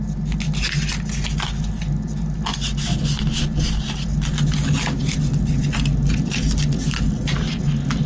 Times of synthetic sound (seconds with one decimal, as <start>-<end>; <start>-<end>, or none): none